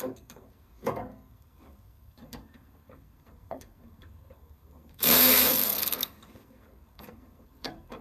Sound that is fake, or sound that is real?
fake